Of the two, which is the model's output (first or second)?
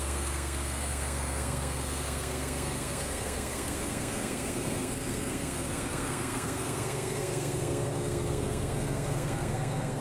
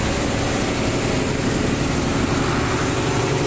first